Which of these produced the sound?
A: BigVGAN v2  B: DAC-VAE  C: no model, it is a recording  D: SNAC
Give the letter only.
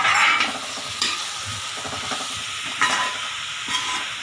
C